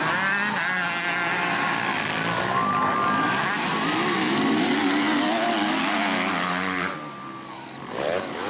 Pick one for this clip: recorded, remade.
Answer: recorded